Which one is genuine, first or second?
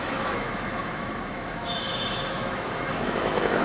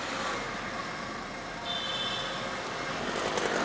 second